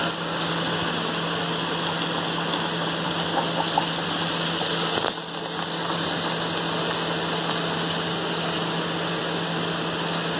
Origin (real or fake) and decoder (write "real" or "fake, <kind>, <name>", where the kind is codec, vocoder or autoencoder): real